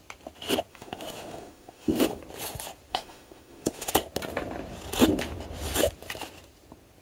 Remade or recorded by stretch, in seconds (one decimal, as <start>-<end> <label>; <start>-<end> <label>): 0.0-0.7 recorded; 0.7-2.2 remade; 2.2-2.9 recorded; 2.9-3.9 remade; 3.9-7.0 recorded